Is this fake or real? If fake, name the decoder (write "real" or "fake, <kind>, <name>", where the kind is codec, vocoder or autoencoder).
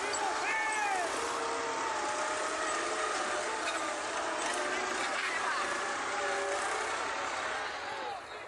real